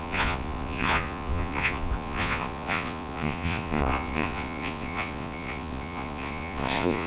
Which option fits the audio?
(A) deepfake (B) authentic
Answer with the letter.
A